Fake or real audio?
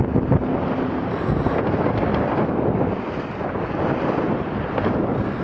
real